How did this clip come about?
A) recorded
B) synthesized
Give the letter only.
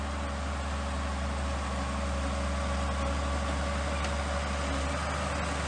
A